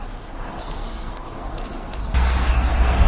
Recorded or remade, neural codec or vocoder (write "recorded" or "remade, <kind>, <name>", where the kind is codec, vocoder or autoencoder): remade, codec, SNAC